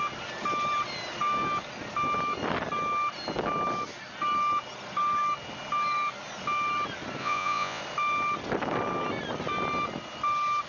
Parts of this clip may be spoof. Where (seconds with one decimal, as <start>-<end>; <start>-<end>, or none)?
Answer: 7.2-7.8